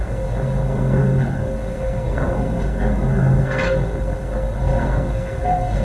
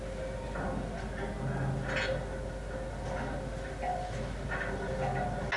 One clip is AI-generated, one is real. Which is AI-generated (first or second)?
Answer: first